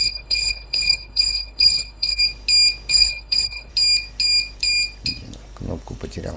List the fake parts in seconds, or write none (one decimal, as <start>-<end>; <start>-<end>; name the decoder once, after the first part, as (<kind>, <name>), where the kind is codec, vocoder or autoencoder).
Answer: 0.0-2.2 (codec, HILCodec); 2.9-3.7